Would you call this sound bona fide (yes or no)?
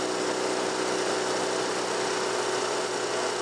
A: yes